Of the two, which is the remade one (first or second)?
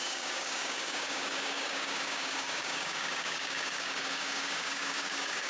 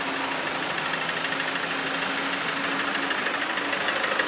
first